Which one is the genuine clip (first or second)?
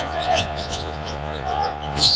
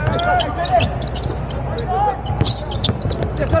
second